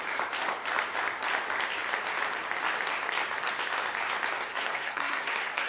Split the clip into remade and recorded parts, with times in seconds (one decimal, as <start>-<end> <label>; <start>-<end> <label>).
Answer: 0.0-4.5 recorded; 4.5-5.7 remade